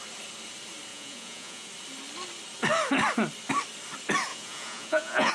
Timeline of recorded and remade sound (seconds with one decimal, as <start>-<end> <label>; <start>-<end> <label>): 0.0-0.9 recorded; 0.9-1.7 remade; 1.7-4.3 recorded; 4.3-5.3 remade